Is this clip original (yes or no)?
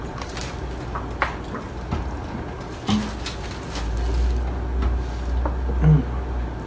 yes